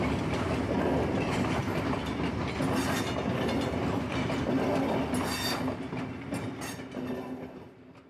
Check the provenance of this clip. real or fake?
real